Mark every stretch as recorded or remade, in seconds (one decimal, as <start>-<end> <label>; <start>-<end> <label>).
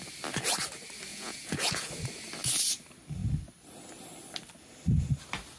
0.0-1.1 recorded; 1.1-1.9 remade; 1.9-5.6 recorded